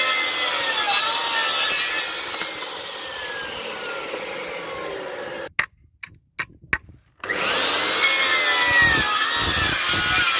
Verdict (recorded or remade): recorded